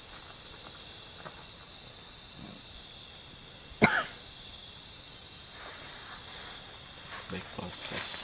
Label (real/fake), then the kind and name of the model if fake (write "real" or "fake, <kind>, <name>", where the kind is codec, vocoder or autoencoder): real